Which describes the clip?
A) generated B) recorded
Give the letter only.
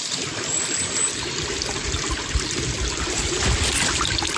B